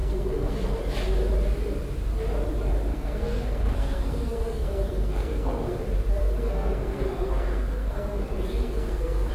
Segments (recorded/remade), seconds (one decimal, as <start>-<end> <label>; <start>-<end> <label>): 0.0-0.8 remade; 0.8-2.9 recorded; 2.9-5.8 remade; 5.8-6.2 recorded; 6.2-9.3 remade